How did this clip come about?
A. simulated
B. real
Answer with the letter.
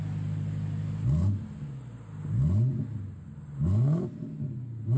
B